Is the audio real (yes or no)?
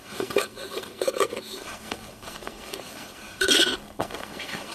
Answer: no